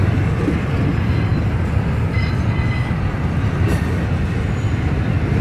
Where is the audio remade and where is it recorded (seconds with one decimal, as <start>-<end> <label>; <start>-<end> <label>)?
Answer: 0.0-5.4 recorded